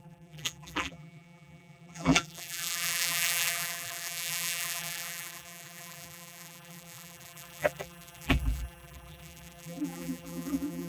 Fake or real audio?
fake